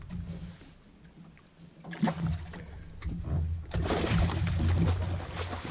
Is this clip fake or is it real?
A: real